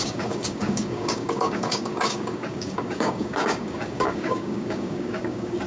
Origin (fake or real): fake